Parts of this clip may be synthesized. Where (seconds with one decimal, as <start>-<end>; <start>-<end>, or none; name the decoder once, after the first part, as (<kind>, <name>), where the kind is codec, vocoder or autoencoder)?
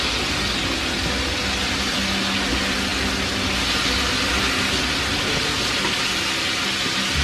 none